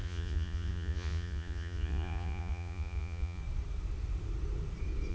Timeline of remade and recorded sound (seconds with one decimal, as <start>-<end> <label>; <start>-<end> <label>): 0.0-3.4 remade; 3.4-5.1 recorded